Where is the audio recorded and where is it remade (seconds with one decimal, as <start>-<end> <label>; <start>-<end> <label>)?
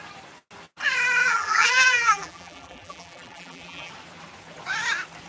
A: 0.0-1.2 recorded; 1.2-3.9 remade; 3.9-5.3 recorded